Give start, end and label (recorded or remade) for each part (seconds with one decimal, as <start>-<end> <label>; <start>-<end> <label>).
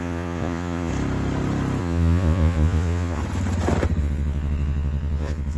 0.0-0.9 remade; 0.9-1.8 recorded; 1.8-3.2 remade; 3.2-4.0 recorded; 4.0-5.6 remade